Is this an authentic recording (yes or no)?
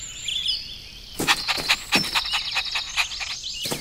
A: yes